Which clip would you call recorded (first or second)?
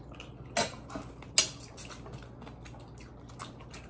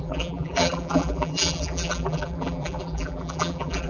first